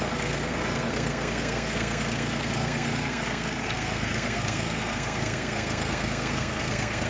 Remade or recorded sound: remade